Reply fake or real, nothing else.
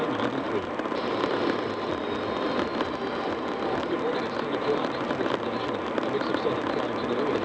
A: real